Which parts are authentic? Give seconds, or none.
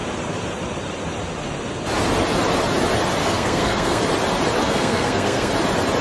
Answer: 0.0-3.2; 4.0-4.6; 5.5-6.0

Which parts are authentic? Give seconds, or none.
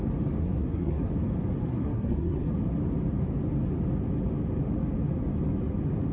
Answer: 0.0-0.4; 1.1-1.7; 2.5-6.1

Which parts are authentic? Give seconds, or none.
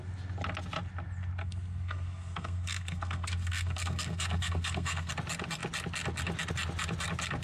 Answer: 0.0-1.4; 5.1-7.4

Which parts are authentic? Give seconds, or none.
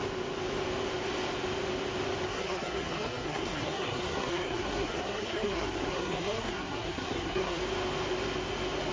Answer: 0.0-2.3; 7.6-8.9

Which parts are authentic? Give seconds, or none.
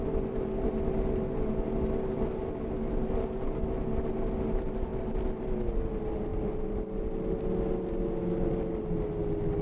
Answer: 0.0-9.6